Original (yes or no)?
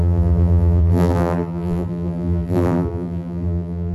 no